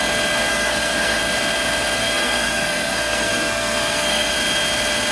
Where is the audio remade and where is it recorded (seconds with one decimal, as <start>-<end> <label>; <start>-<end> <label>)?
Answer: 0.0-0.5 recorded; 0.5-1.2 remade; 1.2-2.0 recorded; 2.0-4.3 remade; 4.3-5.1 recorded